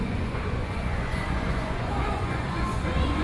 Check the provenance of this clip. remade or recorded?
remade